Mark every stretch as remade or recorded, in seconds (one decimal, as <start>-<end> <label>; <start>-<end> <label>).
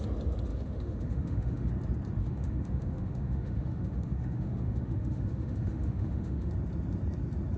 0.0-0.5 recorded; 0.5-1.7 remade; 1.7-2.2 recorded; 2.2-6.5 remade; 6.5-7.6 recorded